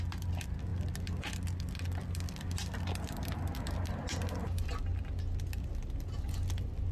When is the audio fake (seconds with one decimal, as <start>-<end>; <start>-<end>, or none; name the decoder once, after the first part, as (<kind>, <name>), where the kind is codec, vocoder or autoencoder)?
none